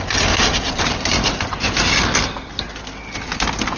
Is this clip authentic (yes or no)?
yes